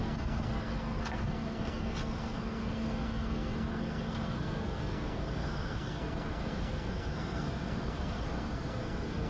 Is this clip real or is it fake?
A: fake